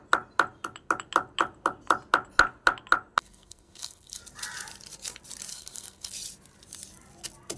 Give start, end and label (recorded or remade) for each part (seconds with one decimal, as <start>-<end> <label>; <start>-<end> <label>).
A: 0.0-3.2 recorded; 3.2-4.2 remade; 4.2-5.5 recorded; 5.5-6.1 remade; 6.1-7.6 recorded

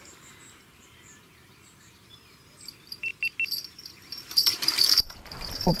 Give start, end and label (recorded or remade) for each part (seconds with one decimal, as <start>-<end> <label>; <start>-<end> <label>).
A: 0.0-3.1 remade; 3.1-3.8 recorded; 3.8-5.8 remade